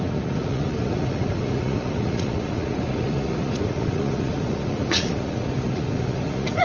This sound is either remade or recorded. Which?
remade